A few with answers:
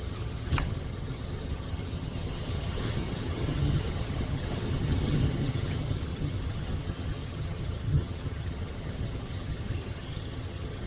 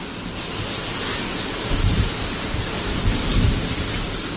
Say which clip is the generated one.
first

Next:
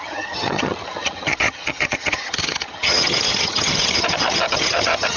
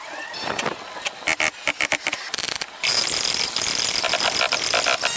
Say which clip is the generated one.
first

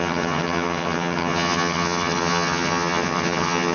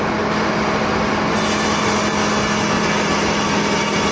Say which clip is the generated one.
first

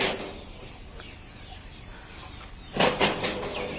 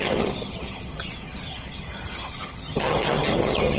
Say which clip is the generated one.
second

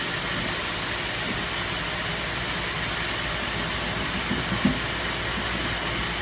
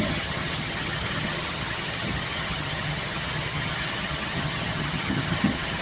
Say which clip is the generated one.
second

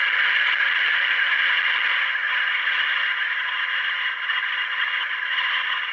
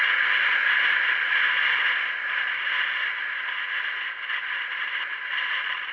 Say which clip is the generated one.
first